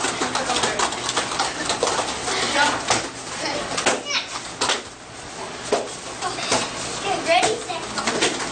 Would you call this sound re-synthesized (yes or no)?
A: no